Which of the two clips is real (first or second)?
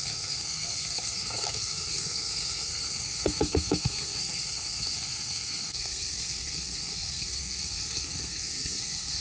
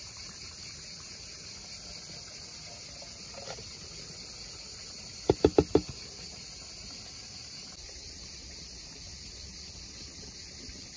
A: second